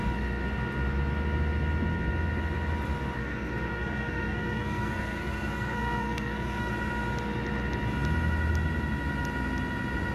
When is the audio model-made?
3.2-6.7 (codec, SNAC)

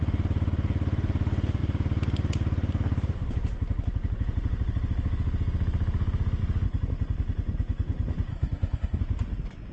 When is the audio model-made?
8.3-9.0 (codec, SNAC)

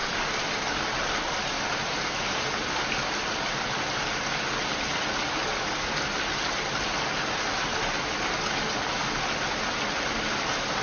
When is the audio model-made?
none

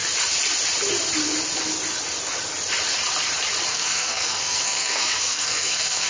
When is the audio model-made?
3.7-6.1 (codec, SNAC)

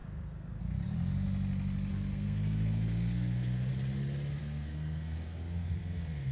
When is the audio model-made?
0.0-0.6 (codec, SNAC); 1.9-3.7; 4.4-6.3

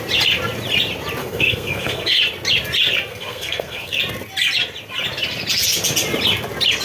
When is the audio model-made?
1.2-2.2 (codec, SNAC); 3.1-4.0